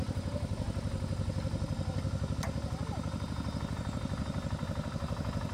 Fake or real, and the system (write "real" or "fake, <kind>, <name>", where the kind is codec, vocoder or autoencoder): real